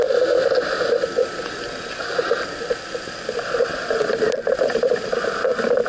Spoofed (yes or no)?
no